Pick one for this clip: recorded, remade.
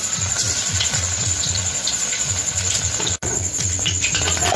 remade